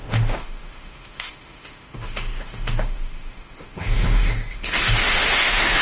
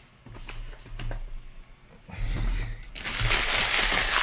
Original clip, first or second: second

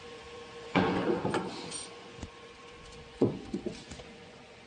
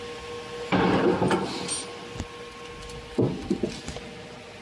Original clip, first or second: second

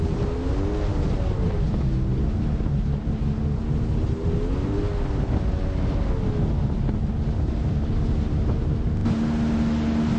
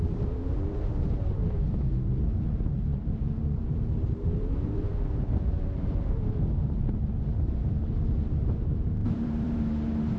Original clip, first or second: first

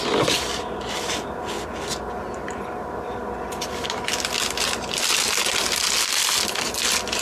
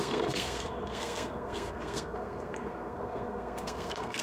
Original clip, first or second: first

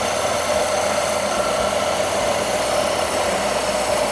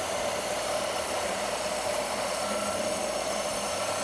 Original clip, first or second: first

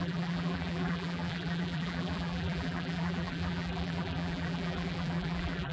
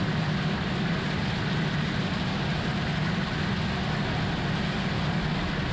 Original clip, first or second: second